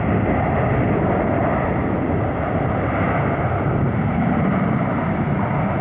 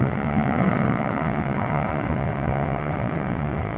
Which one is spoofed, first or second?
second